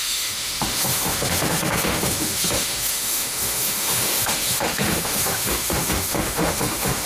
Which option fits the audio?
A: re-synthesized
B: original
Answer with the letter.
A